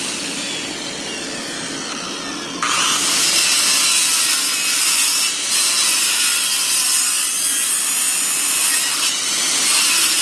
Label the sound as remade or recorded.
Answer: recorded